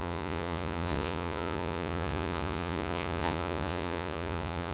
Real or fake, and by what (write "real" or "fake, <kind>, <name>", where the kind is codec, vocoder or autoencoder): fake, vocoder, Vocos